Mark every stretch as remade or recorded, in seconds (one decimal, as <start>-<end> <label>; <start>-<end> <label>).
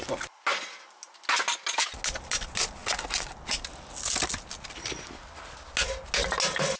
0.0-6.8 recorded